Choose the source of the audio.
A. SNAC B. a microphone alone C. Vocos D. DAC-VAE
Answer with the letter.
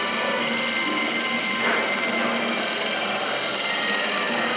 B